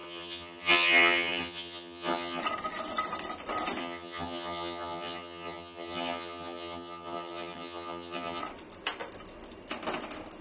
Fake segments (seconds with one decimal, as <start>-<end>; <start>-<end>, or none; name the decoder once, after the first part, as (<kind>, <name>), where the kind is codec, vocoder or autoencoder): 0.0-2.4 (vocoder, HiFi-GAN); 3.8-8.4